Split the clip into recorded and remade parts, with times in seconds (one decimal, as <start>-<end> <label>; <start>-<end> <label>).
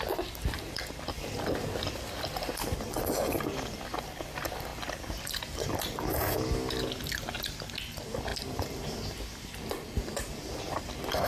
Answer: 0.0-8.3 recorded; 8.3-9.2 remade; 9.2-11.3 recorded